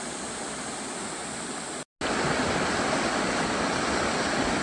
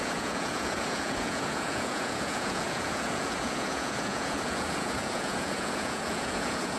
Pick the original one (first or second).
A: first